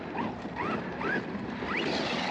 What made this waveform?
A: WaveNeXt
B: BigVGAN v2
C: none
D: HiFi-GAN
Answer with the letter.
C